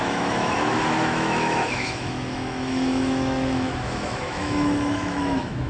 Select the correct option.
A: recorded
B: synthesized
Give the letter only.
B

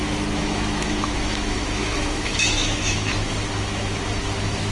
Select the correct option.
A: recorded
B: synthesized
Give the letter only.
B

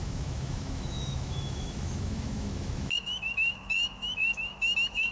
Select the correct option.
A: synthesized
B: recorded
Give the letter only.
A